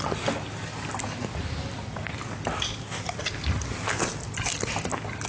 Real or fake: real